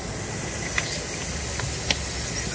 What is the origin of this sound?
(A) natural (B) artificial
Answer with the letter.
A